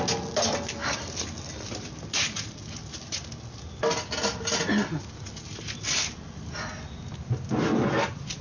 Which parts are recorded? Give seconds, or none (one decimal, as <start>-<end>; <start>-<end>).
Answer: 0.0-8.4